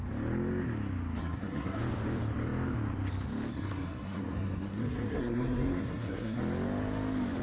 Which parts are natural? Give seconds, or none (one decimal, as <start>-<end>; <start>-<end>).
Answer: 0.0-1.2; 1.8-3.5; 6.4-7.4